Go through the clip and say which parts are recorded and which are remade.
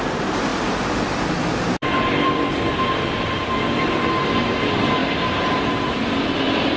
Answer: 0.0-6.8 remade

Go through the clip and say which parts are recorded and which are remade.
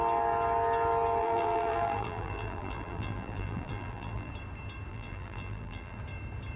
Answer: 0.0-1.2 recorded; 1.2-4.3 remade; 4.3-4.9 recorded; 4.9-6.0 remade; 6.0-6.6 recorded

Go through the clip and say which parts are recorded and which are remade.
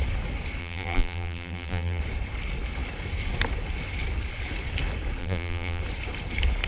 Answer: 0.0-0.6 recorded; 0.6-2.0 remade; 2.0-5.2 recorded; 5.2-5.8 remade; 5.8-6.7 recorded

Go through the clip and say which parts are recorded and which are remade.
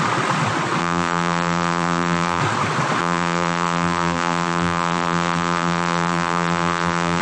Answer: 0.0-0.8 recorded; 0.8-2.4 remade; 2.4-3.0 recorded; 3.0-7.2 remade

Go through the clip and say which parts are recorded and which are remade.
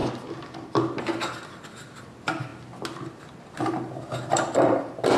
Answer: 0.0-1.0 recorded; 1.0-2.5 remade; 2.5-4.3 recorded; 4.3-5.2 remade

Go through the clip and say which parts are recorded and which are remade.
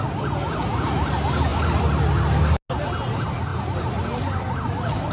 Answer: 0.0-5.1 recorded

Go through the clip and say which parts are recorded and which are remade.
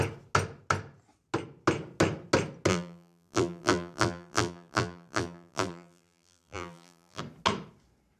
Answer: 0.0-2.7 recorded; 2.7-7.2 remade; 7.2-8.2 recorded